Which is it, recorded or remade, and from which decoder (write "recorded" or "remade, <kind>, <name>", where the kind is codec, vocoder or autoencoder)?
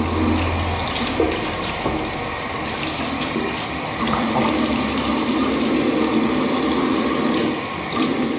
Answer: recorded